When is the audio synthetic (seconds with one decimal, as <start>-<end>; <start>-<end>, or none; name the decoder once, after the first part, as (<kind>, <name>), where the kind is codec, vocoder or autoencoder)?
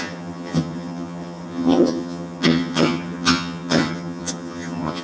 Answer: 0.0-5.0 (vocoder, HiFi-GAN)